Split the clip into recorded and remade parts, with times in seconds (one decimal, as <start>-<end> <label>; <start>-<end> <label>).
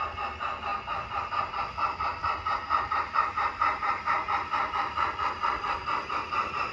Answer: 0.0-6.7 recorded